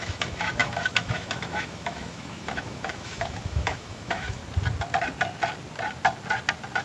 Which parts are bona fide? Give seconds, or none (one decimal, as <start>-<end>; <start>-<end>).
4.4-6.8